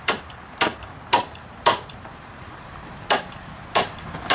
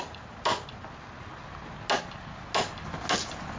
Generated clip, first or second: first